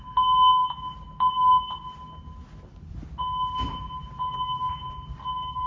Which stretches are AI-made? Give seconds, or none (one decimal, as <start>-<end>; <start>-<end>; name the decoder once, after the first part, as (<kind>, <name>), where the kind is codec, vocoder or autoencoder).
none